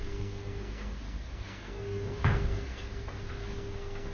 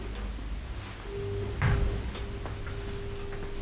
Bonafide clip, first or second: second